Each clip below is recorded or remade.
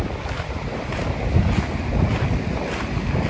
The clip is recorded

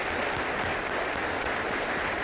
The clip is recorded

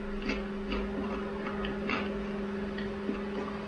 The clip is recorded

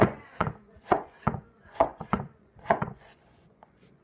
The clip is remade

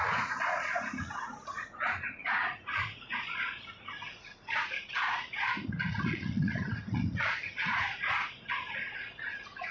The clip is remade